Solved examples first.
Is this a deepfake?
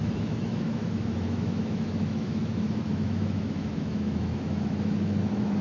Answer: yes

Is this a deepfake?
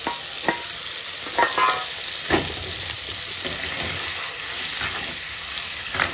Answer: no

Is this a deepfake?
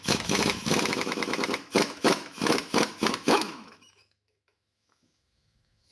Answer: yes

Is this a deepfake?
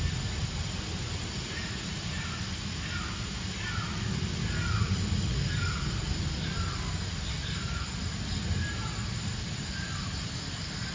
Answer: no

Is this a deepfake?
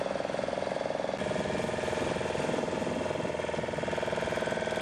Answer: no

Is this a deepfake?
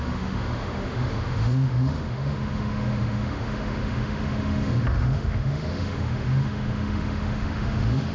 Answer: yes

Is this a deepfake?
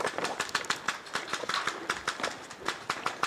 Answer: no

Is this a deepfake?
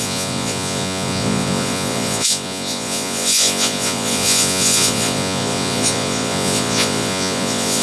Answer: yes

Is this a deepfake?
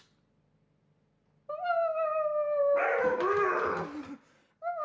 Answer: no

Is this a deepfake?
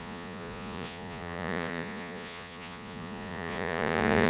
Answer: yes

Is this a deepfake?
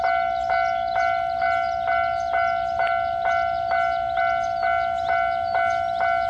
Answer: no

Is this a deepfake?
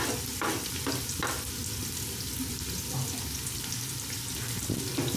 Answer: no